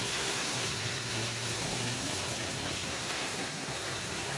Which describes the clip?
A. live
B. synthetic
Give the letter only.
B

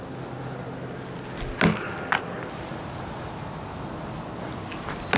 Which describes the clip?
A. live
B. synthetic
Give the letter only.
A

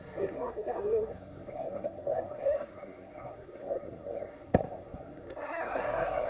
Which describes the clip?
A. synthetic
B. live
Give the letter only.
A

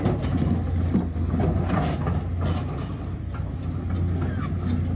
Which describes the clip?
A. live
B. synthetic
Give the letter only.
A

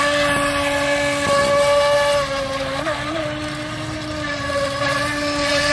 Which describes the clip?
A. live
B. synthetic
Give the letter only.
A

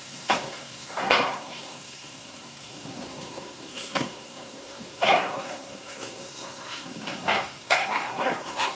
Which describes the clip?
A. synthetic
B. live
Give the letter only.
A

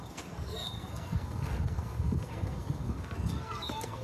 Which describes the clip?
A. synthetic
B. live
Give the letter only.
A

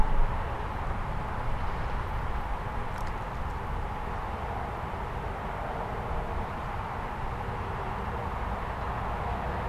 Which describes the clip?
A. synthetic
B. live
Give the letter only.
B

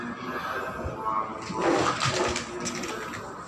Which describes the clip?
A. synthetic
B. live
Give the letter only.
B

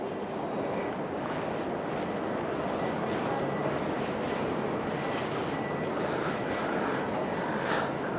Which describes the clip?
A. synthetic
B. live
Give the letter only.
B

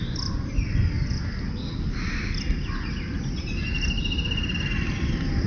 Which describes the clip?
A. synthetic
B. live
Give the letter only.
B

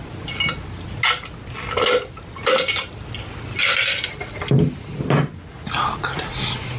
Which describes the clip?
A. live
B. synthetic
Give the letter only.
A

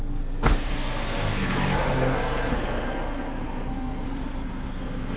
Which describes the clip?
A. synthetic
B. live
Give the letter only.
A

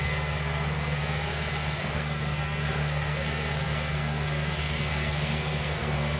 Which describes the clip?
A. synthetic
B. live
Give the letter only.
A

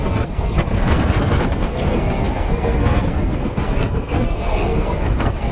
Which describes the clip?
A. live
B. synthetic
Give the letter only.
B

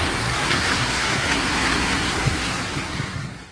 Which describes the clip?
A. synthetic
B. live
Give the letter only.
A